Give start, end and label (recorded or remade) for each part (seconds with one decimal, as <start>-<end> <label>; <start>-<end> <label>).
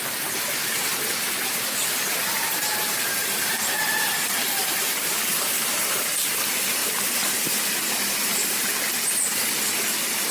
0.0-0.6 recorded; 0.6-4.3 remade; 4.3-5.3 recorded; 5.3-6.3 remade; 6.3-6.8 recorded; 6.8-7.6 remade; 7.6-10.3 recorded